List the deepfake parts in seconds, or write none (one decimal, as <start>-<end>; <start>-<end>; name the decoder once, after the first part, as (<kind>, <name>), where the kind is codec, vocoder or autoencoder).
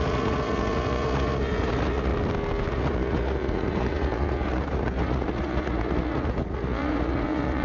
0.0-2.1 (vocoder, Vocos); 2.7-7.6